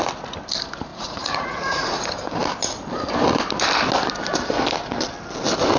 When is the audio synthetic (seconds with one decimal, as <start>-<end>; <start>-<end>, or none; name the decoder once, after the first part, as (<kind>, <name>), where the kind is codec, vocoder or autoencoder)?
0.9-2.0 (vocoder, Vocos)